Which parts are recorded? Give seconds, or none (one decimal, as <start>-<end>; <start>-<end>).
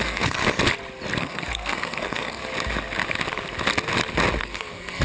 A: 0.4-1.2; 2.4-4.4